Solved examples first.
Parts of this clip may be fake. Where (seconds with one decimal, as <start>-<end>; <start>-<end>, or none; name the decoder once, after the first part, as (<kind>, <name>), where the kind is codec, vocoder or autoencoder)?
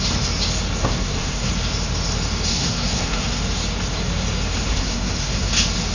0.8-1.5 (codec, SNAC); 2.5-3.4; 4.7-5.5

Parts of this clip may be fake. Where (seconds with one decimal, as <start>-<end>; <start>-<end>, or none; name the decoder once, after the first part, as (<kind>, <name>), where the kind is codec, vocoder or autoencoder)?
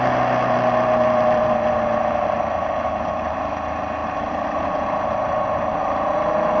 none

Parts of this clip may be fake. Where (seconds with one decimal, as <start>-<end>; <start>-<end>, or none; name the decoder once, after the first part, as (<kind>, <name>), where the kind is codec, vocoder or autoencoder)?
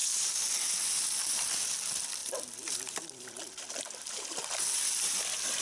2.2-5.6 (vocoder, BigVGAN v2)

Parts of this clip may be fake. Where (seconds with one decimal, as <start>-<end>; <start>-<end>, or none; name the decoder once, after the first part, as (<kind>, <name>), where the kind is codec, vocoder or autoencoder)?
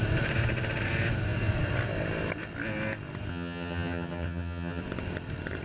3.3-4.8 (vocoder, HiFi-GAN)